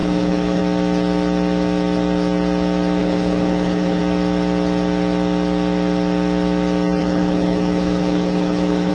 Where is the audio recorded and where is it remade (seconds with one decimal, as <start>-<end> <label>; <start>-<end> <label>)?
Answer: 0.0-0.6 remade; 0.6-3.0 recorded; 3.0-4.0 remade; 4.0-7.0 recorded; 7.0-8.9 remade